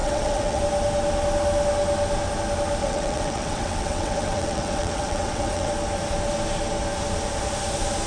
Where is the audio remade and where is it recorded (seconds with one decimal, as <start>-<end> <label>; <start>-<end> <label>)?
0.0-0.6 remade; 0.6-2.8 recorded; 2.8-5.7 remade; 5.7-8.1 recorded